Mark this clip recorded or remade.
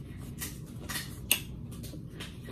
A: recorded